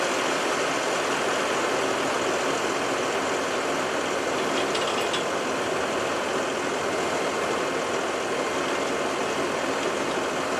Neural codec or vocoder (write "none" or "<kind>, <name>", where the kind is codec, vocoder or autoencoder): none